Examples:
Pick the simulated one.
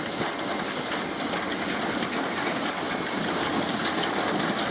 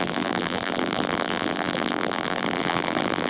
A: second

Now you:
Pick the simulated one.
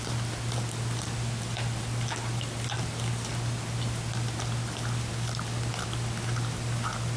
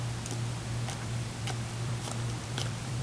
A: second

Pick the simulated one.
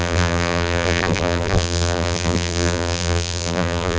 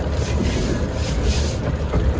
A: first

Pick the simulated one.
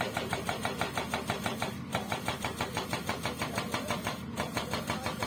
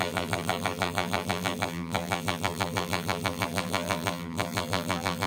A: second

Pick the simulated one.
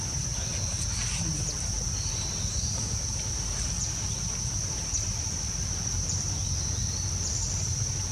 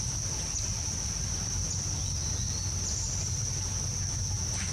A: first